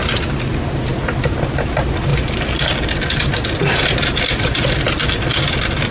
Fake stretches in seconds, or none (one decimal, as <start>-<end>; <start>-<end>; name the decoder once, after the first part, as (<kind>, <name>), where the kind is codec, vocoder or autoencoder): none